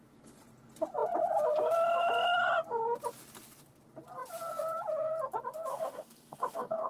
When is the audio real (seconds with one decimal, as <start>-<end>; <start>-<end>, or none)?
0.0-5.7